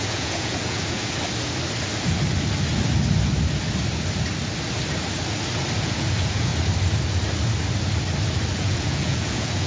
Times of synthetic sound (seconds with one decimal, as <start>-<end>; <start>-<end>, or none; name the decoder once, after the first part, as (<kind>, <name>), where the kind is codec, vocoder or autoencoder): 0.0-1.0 (vocoder, Vocos); 5.8-6.5; 8.5-9.7